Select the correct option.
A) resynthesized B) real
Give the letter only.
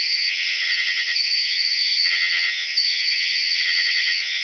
A